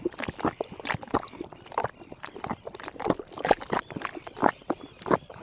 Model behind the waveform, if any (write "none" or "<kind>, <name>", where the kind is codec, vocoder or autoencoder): none